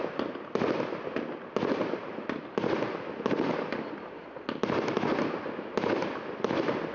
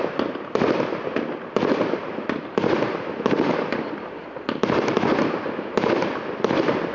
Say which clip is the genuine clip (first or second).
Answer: first